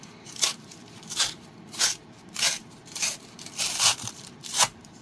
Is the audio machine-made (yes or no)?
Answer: yes